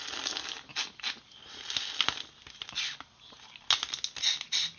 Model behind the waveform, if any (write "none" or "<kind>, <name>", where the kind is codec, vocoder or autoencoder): none